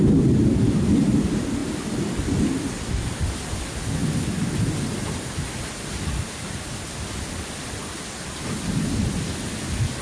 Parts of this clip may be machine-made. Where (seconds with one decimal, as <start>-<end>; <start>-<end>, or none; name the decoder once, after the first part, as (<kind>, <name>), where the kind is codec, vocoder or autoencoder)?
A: none